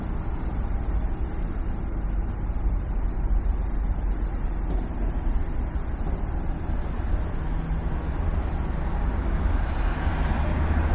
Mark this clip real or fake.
real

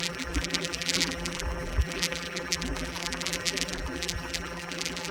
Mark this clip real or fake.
fake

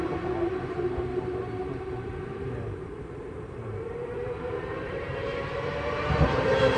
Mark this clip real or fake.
fake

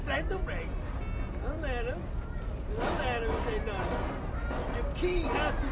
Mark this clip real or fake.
real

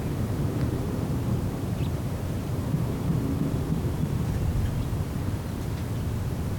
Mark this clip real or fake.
fake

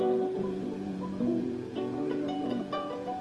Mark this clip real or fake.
fake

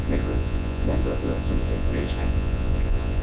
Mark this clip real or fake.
fake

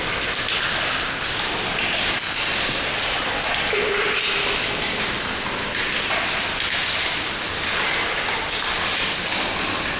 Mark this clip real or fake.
real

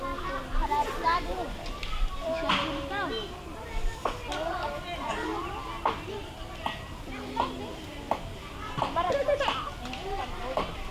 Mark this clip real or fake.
real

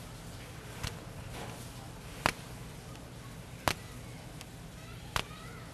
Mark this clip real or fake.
real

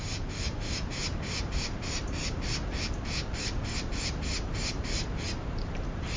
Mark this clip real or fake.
fake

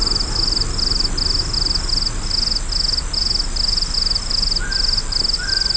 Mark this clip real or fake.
real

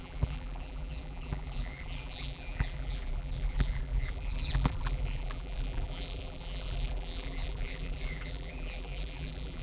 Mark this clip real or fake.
fake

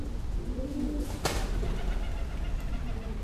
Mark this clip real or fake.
real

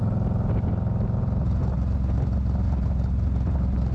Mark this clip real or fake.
real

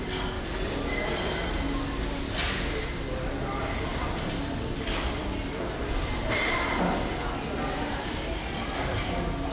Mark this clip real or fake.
real